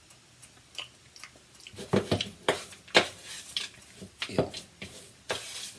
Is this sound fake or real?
real